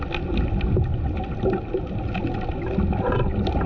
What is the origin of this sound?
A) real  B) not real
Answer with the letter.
A